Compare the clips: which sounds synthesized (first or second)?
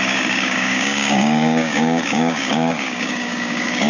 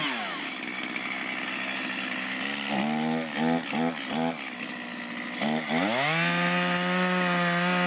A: first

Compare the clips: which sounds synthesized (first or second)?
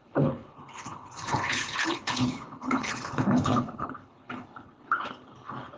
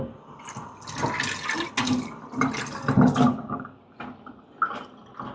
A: first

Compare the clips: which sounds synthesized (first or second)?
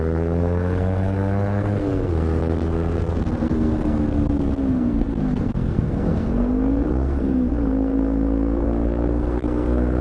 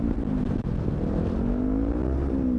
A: first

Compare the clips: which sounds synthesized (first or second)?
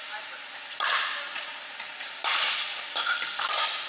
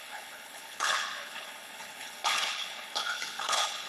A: second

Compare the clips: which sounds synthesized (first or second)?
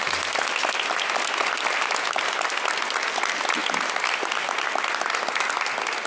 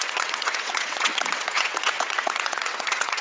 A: second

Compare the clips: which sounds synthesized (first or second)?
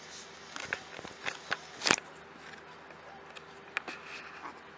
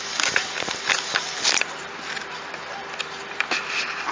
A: second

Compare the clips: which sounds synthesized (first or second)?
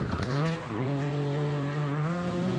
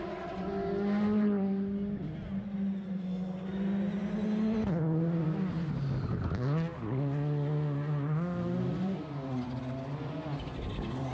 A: first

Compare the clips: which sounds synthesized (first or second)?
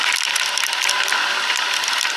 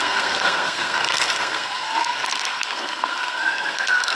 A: second